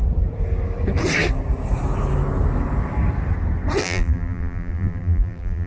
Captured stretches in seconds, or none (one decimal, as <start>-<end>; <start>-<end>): 0.0-3.8